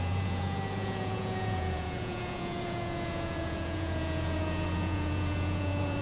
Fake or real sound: fake